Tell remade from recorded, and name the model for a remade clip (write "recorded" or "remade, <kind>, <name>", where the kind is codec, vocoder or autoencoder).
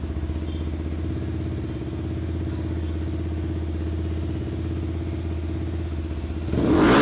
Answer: recorded